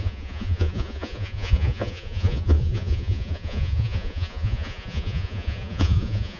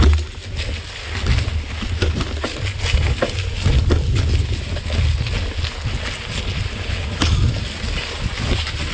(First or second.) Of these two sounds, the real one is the second